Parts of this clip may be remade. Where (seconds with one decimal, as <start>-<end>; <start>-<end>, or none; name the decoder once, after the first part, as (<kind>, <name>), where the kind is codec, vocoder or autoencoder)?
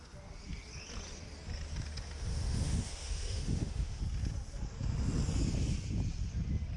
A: 2.3-4.0 (autoencoder, DAC-VAE)